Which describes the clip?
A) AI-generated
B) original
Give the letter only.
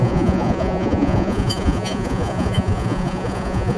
A